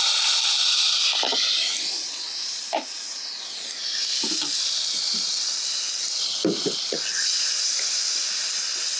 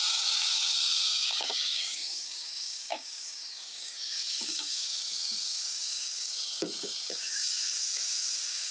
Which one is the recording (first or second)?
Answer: first